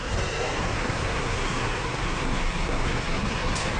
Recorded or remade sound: remade